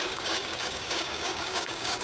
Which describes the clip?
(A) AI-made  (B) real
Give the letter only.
A